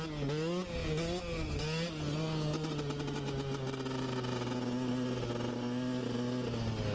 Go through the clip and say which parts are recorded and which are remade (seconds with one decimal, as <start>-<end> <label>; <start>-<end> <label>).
0.0-6.9 recorded